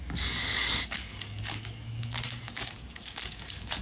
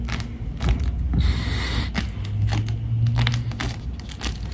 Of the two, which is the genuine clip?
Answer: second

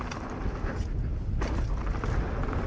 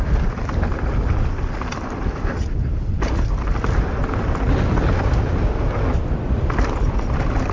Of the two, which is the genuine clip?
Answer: first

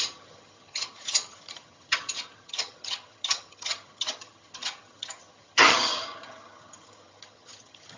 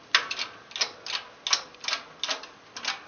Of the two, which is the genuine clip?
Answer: second